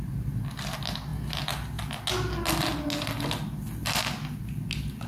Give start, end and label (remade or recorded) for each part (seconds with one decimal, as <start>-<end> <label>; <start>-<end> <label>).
0.0-5.1 recorded

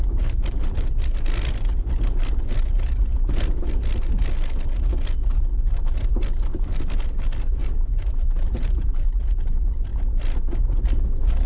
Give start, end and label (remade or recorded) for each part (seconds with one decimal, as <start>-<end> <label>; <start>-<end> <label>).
0.0-7.6 recorded; 7.6-9.2 remade; 9.2-11.5 recorded

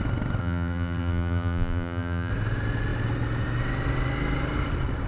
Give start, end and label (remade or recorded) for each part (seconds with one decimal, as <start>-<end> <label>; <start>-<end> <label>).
0.0-0.4 recorded; 0.4-2.3 remade; 2.3-5.1 recorded